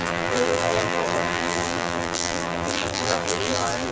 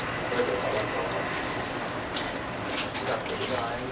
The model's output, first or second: first